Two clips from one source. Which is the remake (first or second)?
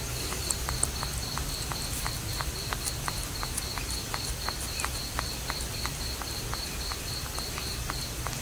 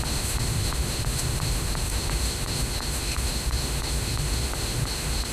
second